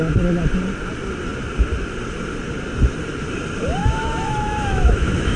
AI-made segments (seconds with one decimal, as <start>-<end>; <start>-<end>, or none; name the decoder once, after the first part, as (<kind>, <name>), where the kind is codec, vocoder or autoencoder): 3.8-5.4 (autoencoder, DAC-VAE)